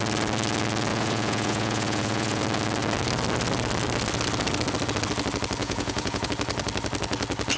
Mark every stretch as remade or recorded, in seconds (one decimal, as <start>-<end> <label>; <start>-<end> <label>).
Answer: 0.0-0.9 recorded; 0.9-2.4 remade; 2.4-5.6 recorded; 5.6-6.3 remade; 6.3-7.6 recorded